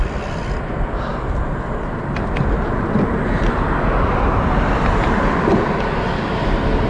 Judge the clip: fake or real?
real